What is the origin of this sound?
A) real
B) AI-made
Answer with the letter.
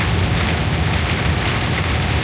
A